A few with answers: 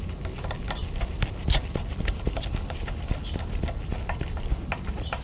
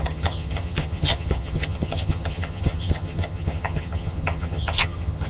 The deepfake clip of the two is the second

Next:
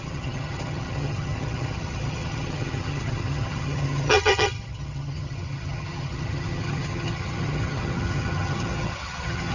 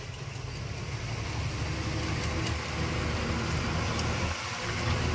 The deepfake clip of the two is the first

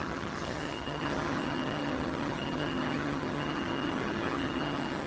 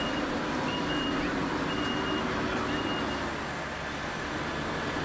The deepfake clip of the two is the first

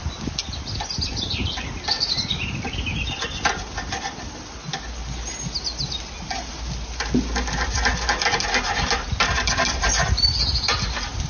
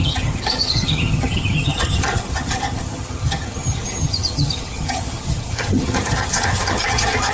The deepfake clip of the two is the second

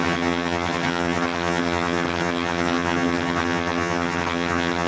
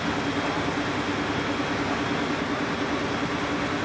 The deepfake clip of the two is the first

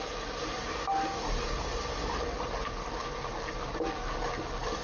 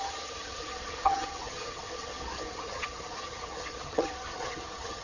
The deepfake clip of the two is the second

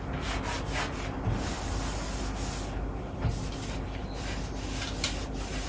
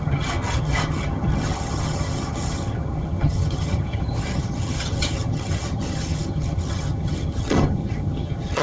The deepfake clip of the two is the second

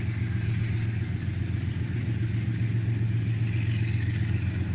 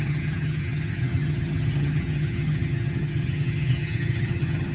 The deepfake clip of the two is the second